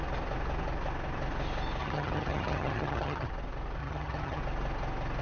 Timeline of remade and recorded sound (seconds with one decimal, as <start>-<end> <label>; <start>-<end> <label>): 0.0-1.8 recorded; 1.8-3.3 remade; 3.3-3.8 recorded; 3.8-4.4 remade; 4.4-5.2 recorded